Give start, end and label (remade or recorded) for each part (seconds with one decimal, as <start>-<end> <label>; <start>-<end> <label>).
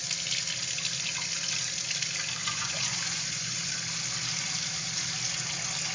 0.0-2.4 recorded; 2.4-3.7 remade; 3.7-5.9 recorded